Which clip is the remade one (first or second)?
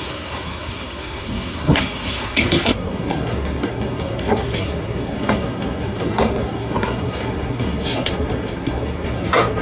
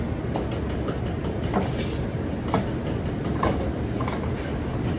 first